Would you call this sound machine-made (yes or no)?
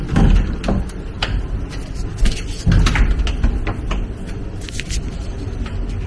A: no